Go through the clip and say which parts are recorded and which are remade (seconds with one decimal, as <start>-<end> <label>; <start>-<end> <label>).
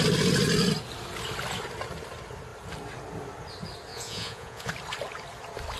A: 0.0-3.9 recorded; 3.9-4.7 remade; 4.7-5.8 recorded